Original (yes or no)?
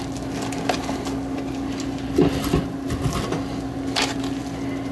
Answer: yes